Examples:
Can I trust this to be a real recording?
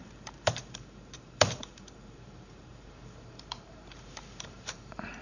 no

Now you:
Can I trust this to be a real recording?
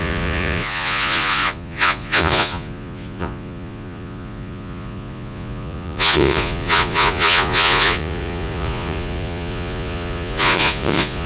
no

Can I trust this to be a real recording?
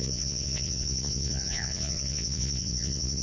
no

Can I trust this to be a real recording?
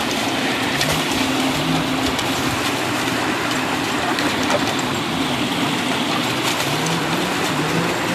yes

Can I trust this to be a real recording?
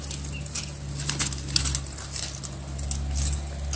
yes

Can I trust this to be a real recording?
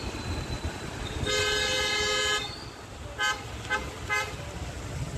yes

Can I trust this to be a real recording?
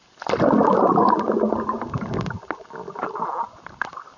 yes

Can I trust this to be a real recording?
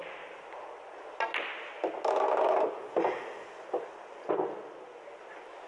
yes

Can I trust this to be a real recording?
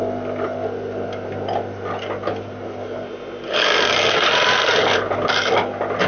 yes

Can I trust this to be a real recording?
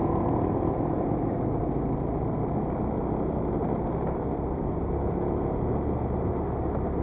yes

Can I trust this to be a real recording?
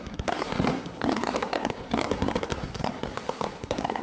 no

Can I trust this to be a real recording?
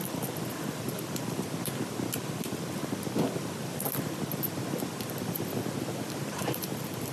yes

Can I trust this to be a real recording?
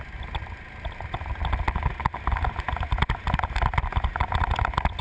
yes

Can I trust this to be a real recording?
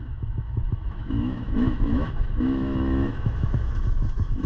no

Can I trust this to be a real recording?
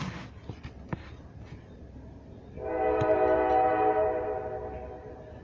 yes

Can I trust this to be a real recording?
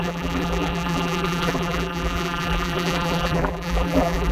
no